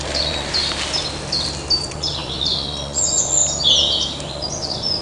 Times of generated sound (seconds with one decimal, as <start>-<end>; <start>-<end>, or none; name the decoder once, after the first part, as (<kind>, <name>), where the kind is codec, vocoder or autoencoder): 0.0-0.6 (vocoder, Vocos); 1.8-3.4; 4.3-5.0